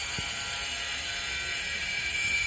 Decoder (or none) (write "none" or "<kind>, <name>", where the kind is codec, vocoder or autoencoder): none